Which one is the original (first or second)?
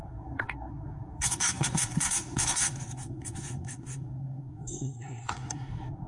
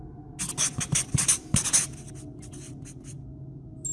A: second